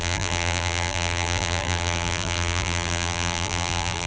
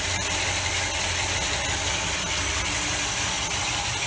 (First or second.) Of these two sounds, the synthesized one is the first